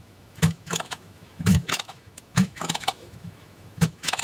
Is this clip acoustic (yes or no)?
no